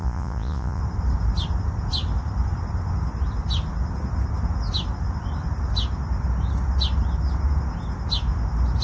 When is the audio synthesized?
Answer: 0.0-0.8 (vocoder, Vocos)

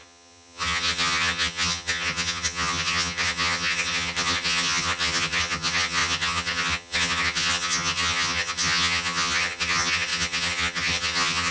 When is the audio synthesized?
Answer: 0.0-11.5 (vocoder, HiFi-GAN)